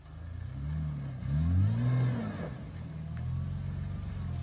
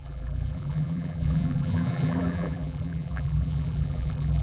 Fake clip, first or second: second